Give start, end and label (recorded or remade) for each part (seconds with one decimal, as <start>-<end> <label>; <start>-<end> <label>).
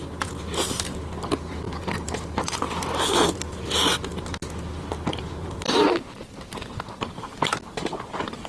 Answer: 0.0-2.8 recorded; 2.8-3.6 remade; 3.6-5.1 recorded; 5.1-8.5 remade